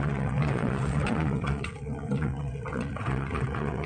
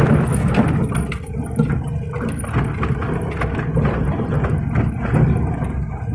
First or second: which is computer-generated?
first